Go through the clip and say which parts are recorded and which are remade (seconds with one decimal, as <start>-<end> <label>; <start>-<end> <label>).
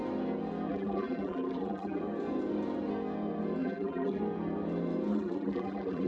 0.0-0.7 recorded; 0.7-2.0 remade; 2.0-3.6 recorded; 3.6-4.2 remade; 4.2-5.1 recorded; 5.1-6.1 remade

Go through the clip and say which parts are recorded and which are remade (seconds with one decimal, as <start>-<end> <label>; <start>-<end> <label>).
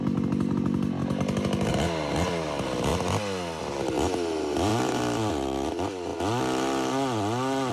0.0-1.0 recorded; 1.0-1.7 remade; 1.7-4.7 recorded; 4.7-5.3 remade; 5.3-7.7 recorded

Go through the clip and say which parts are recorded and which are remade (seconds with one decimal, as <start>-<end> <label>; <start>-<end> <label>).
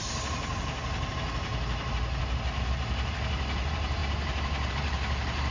0.0-1.1 recorded; 1.1-1.5 remade; 1.5-2.2 recorded; 2.2-5.5 remade